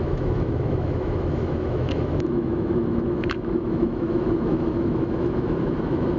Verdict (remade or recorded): remade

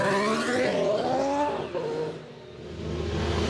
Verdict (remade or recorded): recorded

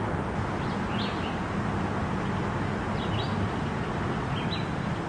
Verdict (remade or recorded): recorded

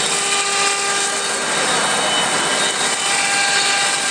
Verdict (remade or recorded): recorded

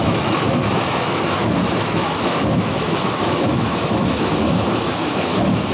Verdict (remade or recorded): remade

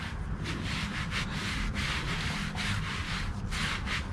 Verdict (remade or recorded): recorded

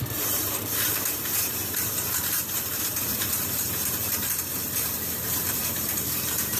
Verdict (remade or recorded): remade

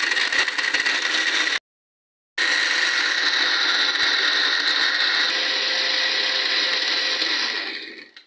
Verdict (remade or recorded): recorded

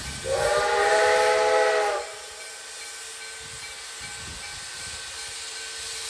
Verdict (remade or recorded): recorded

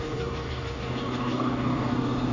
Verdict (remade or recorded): remade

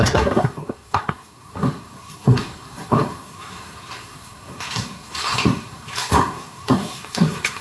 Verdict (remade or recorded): remade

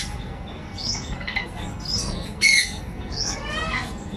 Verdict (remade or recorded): remade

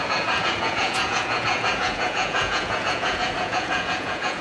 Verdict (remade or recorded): remade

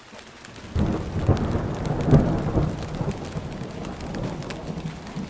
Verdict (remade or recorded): recorded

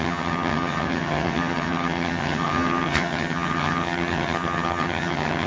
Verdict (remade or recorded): remade